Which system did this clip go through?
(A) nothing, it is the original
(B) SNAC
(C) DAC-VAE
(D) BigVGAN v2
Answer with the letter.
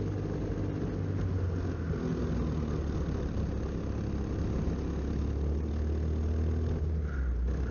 A